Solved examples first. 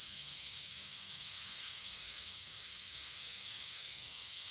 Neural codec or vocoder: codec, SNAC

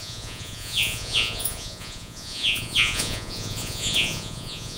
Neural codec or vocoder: vocoder, Vocos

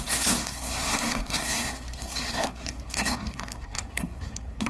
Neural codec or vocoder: codec, SNAC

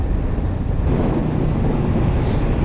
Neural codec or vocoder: none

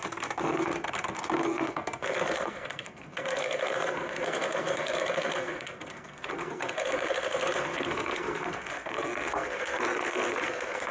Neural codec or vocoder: codec, SNAC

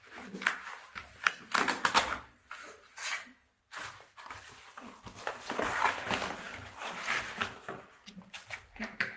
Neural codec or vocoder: none